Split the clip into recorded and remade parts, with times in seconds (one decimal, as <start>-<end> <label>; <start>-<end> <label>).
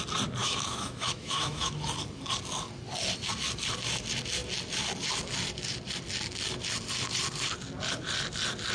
0.0-0.4 recorded; 0.4-1.7 remade; 1.7-8.7 recorded